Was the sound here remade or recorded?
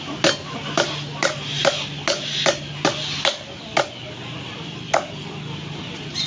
recorded